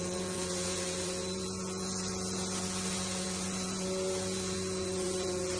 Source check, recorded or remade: remade